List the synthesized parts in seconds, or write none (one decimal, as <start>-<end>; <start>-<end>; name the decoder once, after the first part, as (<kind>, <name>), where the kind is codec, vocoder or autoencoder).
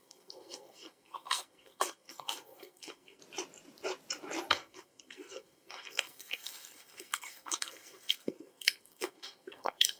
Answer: 0.0-3.2 (codec, SNAC); 4.5-10.0